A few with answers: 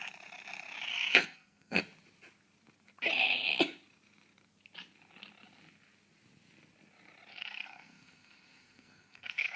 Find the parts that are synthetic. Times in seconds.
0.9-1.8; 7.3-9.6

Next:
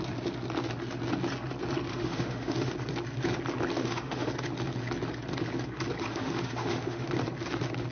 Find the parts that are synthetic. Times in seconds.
1.9-2.7; 3.8-4.3; 6.1-7.1

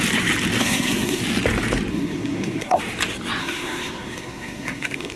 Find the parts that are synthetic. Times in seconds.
0.6-1.2; 1.9-2.8; 3.4-5.2

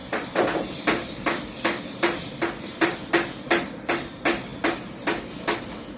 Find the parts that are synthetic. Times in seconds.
0.0-3.1

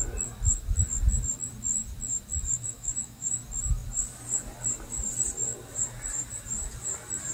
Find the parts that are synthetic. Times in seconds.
2.5-3.4